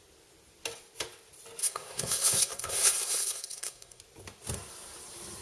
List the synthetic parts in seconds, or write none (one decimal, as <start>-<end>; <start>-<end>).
1.6-4.0